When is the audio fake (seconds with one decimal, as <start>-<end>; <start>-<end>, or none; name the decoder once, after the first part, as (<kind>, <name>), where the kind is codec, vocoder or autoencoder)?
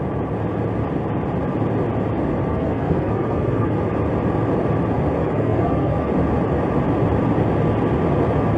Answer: 2.4-3.8 (codec, SNAC); 5.2-6.1